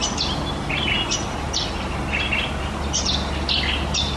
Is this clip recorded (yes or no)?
yes